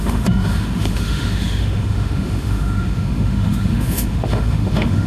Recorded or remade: remade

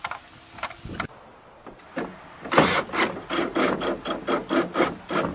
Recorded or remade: recorded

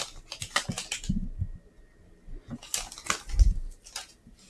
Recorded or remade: recorded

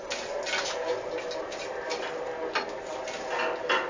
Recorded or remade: recorded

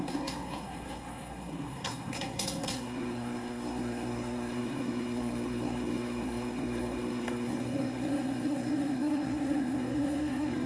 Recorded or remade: remade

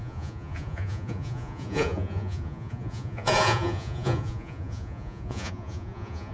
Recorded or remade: remade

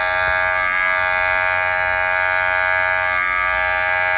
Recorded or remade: recorded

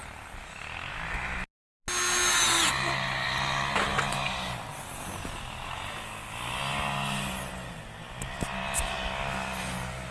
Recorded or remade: recorded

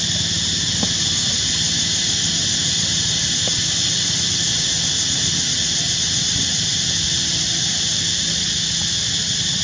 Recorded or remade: recorded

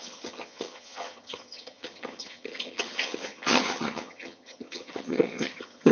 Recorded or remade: remade